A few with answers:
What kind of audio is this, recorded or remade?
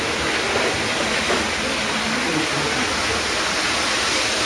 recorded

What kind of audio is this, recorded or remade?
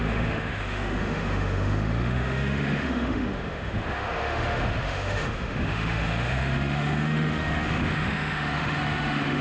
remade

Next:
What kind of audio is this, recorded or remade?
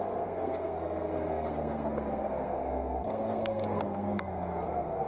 remade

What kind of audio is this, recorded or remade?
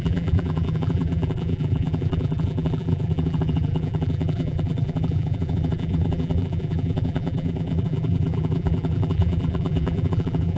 remade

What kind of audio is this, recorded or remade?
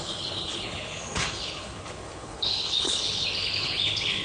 remade